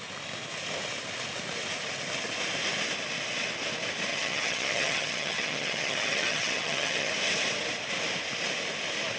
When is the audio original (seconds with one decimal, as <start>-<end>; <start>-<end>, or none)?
0.0-4.1; 7.1-9.2